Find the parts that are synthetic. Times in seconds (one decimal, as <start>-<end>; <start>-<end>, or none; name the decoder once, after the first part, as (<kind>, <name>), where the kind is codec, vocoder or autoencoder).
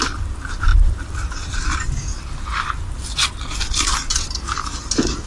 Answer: none